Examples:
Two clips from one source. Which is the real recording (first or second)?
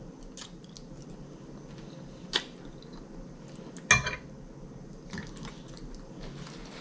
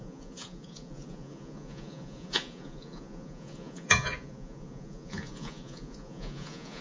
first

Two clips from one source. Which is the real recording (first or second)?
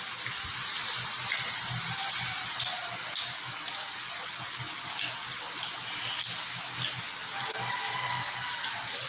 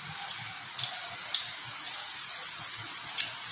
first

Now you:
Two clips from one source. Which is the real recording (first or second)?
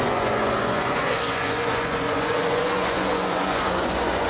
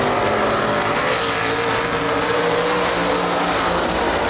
second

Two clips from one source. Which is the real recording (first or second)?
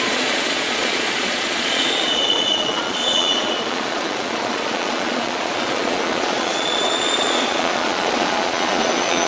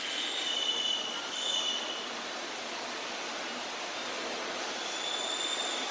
second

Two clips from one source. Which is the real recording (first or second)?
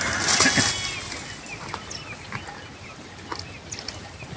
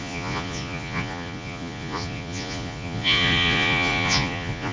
first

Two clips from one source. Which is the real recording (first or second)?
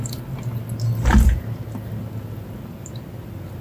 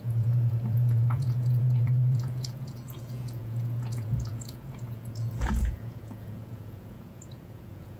first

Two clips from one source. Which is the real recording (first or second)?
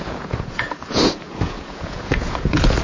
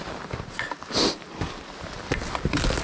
second